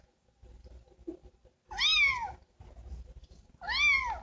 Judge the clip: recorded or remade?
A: recorded